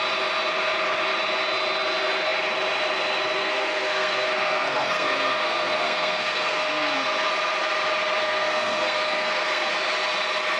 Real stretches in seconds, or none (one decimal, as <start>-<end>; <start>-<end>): 0.0-3.4; 7.3-8.2; 9.7-10.6